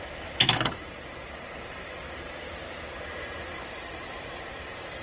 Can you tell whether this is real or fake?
fake